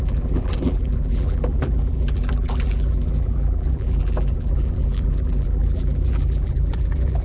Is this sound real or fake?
fake